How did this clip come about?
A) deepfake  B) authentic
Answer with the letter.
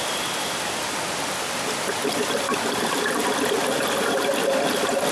B